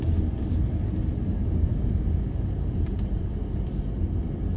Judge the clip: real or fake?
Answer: real